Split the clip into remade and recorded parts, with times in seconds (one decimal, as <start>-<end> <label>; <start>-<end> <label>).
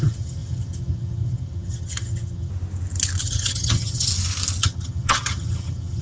0.0-2.5 remade; 2.5-3.2 recorded; 3.2-4.1 remade; 4.1-4.6 recorded; 4.6-6.0 remade